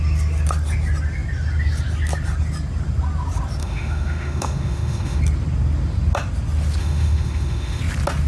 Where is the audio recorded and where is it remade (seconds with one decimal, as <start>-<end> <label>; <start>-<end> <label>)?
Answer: 0.0-3.6 recorded; 3.6-5.2 remade; 5.2-6.8 recorded; 6.8-7.8 remade; 7.8-8.3 recorded

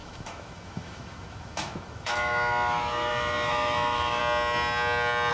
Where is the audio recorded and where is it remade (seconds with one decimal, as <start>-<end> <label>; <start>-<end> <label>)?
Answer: 0.0-4.2 remade; 4.2-5.3 recorded

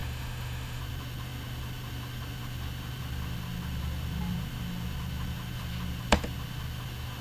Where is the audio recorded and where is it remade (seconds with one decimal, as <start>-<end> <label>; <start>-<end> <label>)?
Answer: 0.0-0.8 remade; 0.8-7.2 recorded

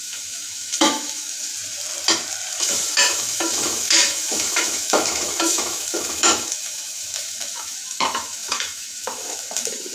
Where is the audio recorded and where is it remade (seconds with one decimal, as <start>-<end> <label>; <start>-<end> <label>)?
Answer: 0.0-1.5 remade; 1.5-2.5 recorded; 2.5-9.9 remade